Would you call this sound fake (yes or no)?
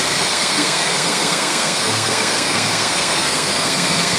yes